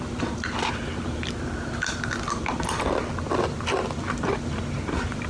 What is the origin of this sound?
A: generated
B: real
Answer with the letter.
B